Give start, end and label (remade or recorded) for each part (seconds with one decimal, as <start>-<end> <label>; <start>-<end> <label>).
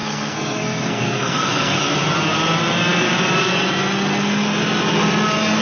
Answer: 0.0-1.8 remade; 1.8-5.6 recorded